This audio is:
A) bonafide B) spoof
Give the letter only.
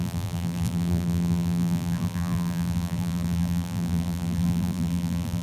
B